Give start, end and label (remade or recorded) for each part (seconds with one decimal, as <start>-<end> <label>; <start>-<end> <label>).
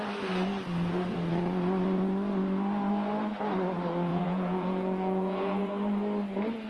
0.0-4.1 recorded; 4.1-5.7 remade; 5.7-6.7 recorded